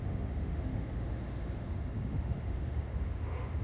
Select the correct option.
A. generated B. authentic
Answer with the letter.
A